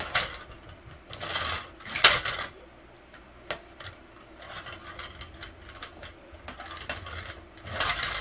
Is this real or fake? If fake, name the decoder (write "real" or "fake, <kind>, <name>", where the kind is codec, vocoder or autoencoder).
real